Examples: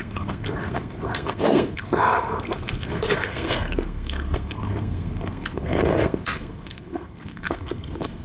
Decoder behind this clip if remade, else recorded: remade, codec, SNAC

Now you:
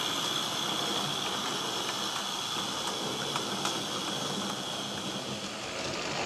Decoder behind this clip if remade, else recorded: recorded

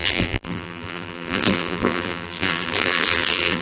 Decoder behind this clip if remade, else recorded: remade, vocoder, BigVGAN v2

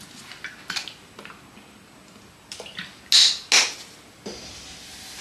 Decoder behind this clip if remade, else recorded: recorded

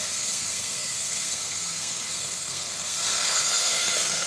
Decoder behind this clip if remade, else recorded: remade, codec, SNAC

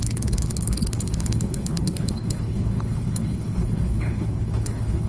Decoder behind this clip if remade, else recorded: remade, codec, HILCodec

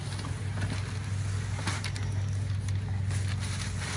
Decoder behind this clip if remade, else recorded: recorded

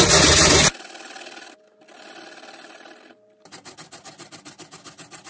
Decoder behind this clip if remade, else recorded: recorded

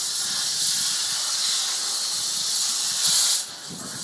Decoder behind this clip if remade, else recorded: recorded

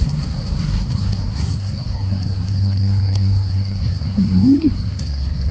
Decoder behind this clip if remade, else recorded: remade, codec, SNAC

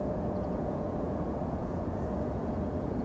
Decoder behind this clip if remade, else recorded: remade, vocoder, Vocos